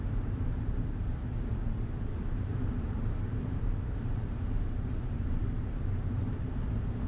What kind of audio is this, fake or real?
fake